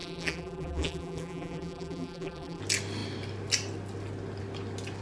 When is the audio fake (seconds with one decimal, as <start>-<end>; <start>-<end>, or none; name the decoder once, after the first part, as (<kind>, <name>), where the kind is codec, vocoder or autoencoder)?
0.0-2.6 (vocoder, BigVGAN v2)